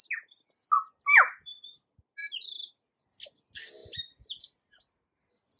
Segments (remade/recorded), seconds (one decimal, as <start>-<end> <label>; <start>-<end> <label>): 0.0-5.6 recorded